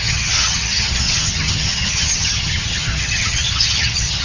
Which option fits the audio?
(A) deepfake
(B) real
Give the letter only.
A